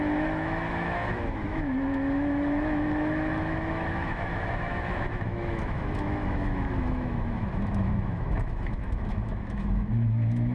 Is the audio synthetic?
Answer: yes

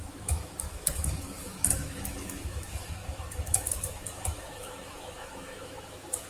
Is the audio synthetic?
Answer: yes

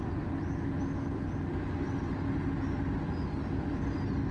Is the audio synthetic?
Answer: no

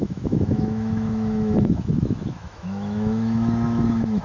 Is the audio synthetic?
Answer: yes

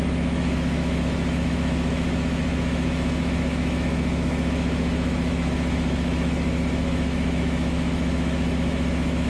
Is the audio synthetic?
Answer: yes